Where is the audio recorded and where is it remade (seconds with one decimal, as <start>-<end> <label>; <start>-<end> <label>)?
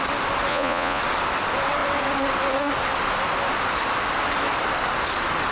0.0-0.5 recorded; 0.5-1.0 remade; 1.0-5.5 recorded